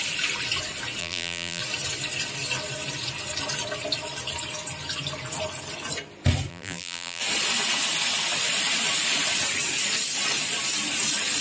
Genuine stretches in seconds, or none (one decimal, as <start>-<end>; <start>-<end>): 0.0-1.0; 1.6-6.5; 7.2-11.4